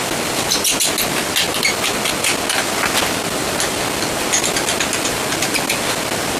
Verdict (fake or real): real